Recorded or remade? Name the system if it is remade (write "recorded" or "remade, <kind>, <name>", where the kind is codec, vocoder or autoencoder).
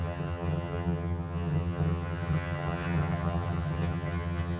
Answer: remade, vocoder, HiFi-GAN